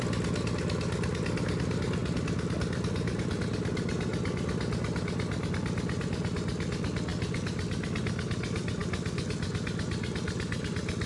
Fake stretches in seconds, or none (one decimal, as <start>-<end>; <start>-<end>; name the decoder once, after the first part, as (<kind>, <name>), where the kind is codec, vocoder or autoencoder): 2.0-3.4 (vocoder, BigVGAN v2)

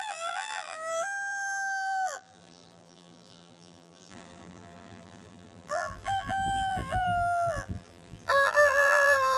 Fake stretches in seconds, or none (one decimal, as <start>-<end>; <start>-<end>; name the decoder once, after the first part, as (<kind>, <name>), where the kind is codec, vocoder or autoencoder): 0.0-9.4 (vocoder, BigVGAN v2)

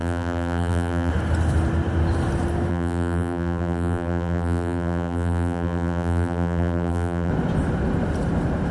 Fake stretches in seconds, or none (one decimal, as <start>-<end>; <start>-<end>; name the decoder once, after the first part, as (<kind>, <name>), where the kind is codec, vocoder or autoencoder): 0.0-1.1 (vocoder, BigVGAN v2); 2.7-7.3

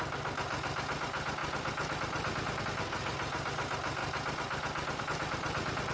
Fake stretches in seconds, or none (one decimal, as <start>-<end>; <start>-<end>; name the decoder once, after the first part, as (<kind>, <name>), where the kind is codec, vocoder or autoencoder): none

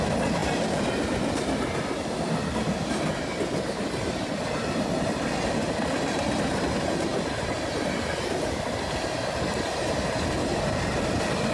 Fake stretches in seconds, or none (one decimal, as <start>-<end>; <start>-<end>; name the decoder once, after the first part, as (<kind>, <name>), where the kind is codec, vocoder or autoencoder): none

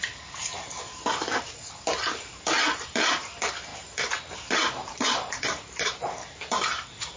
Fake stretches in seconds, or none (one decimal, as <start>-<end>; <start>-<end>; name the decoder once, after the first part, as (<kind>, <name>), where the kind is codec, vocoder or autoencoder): 0.0-7.2 (vocoder, BigVGAN v2)